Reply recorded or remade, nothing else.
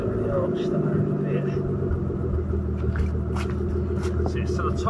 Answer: recorded